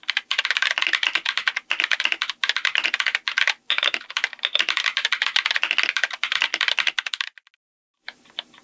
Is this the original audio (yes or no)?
yes